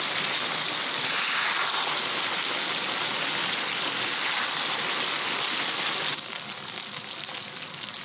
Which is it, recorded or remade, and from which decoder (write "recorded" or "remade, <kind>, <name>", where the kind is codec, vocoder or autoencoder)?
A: recorded